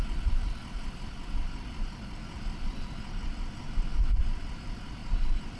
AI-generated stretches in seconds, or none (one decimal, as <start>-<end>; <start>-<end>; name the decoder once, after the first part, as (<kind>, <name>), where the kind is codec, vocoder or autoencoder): 0.0-0.6 (vocoder, BigVGAN v2); 1.2-2.2; 4.2-5.6